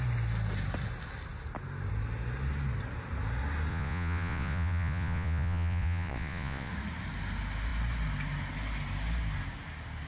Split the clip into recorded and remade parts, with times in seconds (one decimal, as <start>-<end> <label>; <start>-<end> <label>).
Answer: 0.0-3.7 recorded; 3.7-6.7 remade; 6.7-10.1 recorded